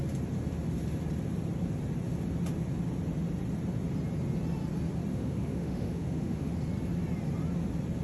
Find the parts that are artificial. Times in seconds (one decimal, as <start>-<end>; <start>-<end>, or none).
5.1-6.5